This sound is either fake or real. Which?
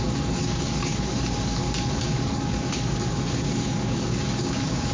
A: fake